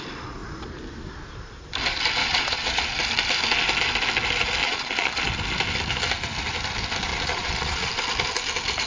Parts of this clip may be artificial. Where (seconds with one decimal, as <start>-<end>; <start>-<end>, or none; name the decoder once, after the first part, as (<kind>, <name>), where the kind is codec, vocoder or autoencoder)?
2.2-2.8 (vocoder, Vocos); 4.6-5.2; 7.1-7.9